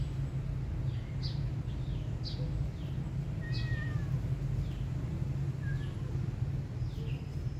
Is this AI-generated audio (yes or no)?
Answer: no